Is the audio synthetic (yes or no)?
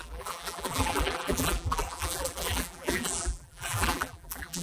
yes